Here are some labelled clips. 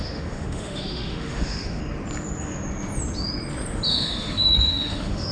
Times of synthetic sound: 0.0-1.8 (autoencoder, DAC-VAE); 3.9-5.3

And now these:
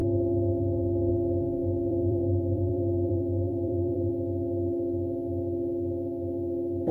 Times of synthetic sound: 1.6-4.1 (vocoder, BigVGAN v2)

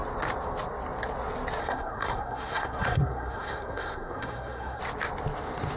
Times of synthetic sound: 1.6-4.8 (codec, SNAC)